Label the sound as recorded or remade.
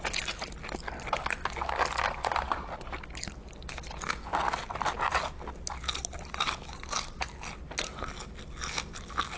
recorded